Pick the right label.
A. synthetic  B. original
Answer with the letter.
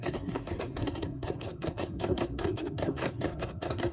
A